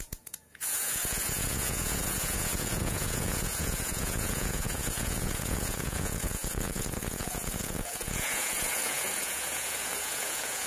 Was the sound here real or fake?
fake